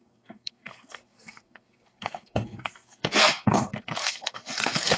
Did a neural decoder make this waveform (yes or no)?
yes